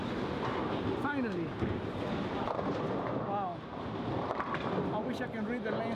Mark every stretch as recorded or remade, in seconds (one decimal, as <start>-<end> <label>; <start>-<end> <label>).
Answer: 0.0-6.0 recorded